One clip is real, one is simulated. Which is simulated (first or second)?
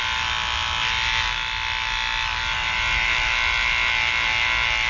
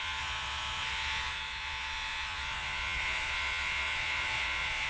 second